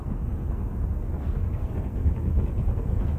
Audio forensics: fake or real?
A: fake